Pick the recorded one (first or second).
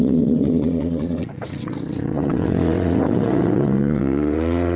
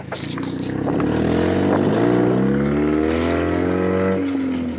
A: second